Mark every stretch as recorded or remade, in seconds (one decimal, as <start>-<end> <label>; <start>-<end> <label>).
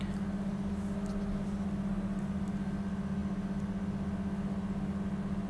0.0-5.5 recorded